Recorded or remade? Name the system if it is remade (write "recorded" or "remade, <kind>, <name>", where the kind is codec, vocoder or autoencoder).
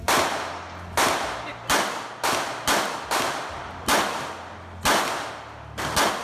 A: recorded